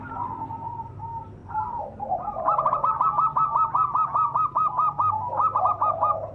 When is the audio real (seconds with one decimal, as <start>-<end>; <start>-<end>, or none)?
0.0-1.4; 2.7-6.3